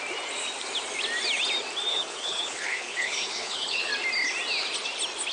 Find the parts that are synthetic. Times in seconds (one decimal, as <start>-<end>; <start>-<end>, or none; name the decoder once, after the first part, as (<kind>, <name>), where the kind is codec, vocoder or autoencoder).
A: 1.9-3.9 (codec, HILCodec)